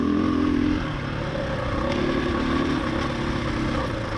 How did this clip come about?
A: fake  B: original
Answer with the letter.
B